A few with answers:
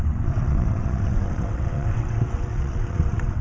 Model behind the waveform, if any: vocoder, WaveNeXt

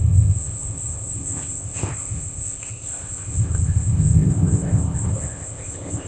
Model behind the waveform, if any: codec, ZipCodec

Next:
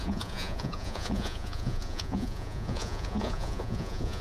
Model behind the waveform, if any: vocoder, Vocos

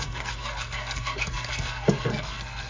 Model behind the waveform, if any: codec, SNAC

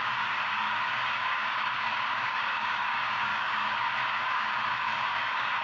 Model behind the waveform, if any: codec, DAC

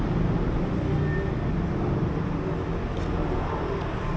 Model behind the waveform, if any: none